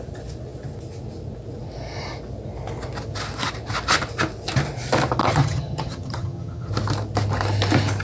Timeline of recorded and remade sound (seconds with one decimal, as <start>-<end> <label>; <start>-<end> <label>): 0.0-5.2 recorded; 5.2-6.7 remade; 6.7-8.0 recorded